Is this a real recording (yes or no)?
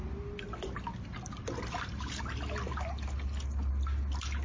yes